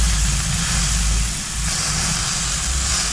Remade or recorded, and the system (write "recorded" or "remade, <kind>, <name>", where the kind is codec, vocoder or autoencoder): recorded